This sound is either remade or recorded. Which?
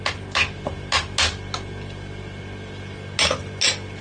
recorded